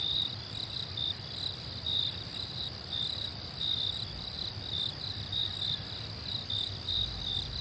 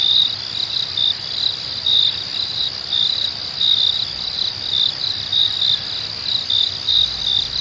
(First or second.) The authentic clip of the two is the second